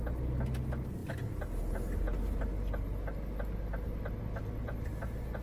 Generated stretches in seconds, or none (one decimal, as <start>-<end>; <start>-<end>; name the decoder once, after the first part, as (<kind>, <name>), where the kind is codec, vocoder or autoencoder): none